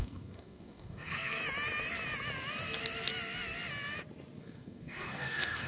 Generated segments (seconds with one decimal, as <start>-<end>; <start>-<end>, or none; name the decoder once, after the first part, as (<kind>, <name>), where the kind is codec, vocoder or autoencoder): 0.0-1.4 (codec, SNAC); 4.4-5.7